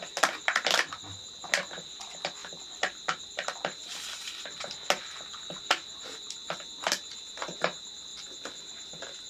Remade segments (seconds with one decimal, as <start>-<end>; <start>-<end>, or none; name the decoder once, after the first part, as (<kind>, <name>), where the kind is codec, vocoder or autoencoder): 2.4-4.6 (vocoder, BigVGAN v2); 8.1-9.3